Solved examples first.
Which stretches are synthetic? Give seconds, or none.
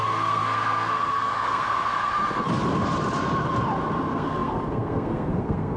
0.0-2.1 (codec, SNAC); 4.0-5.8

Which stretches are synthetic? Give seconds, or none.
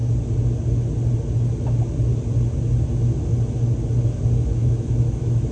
4.6-5.5 (autoencoder, DAC-VAE)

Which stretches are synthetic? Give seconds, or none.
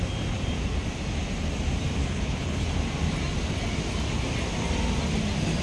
2.0-2.7 (codec, HILCodec)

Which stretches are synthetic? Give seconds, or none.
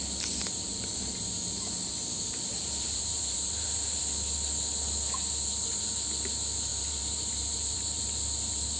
2.0-4.0 (vocoder, BigVGAN v2); 6.7-8.8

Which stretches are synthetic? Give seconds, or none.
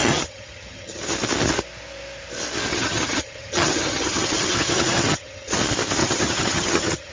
0.0-1.0 (vocoder, HiFi-GAN); 2.7-5.6; 6.0-7.1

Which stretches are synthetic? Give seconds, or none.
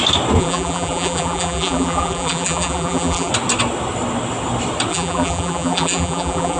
0.4-3.3 (vocoder, BigVGAN v2); 4.9-6.6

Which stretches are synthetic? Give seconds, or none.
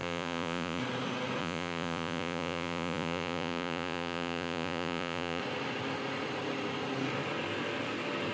0.0-0.8 (vocoder, Vocos); 1.4-5.4